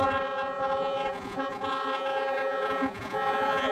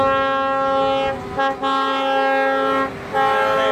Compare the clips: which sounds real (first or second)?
second